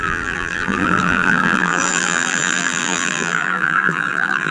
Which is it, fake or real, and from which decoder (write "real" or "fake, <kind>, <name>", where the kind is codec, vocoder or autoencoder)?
fake, vocoder, BigVGAN v2